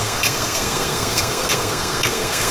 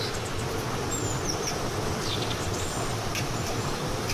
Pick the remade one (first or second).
first